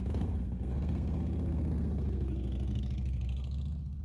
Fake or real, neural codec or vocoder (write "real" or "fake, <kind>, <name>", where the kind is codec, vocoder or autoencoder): fake, codec, SNAC